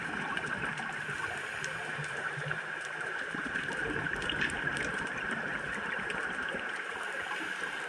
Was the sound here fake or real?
fake